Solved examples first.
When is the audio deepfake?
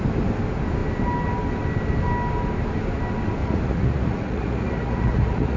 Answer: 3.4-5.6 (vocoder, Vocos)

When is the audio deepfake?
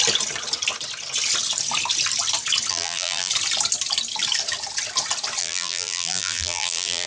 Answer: 2.7-3.3 (vocoder, BigVGAN v2); 5.4-7.1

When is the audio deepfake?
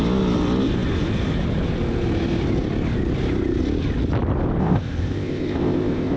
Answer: 4.6-6.2 (codec, ZipCodec)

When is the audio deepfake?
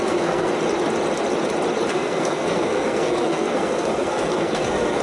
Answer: 0.0-0.5 (codec, SNAC); 1.9-5.0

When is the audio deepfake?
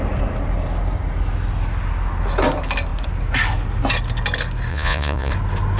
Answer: 4.7-5.3 (vocoder, Vocos)